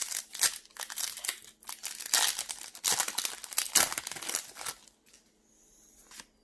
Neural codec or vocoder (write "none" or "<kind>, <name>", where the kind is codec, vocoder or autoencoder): none